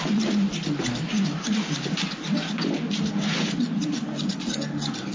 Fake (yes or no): no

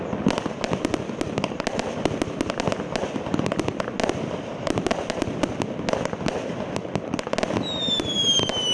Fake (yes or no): no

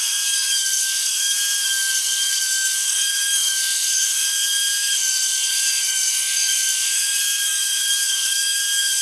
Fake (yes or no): yes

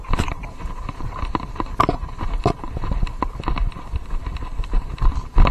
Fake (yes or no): no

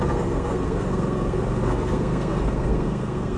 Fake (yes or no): yes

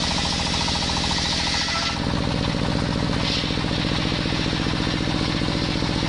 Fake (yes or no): no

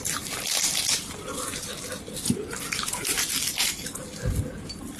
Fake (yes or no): no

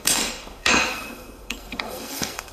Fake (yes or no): yes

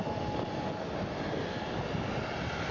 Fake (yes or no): no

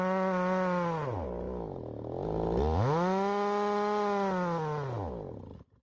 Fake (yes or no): no